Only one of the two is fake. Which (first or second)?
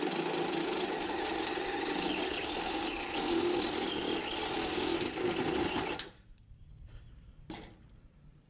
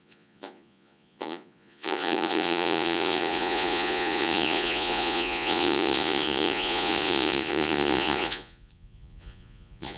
second